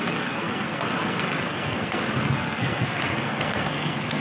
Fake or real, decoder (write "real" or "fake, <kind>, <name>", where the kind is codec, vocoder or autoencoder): fake, codec, SNAC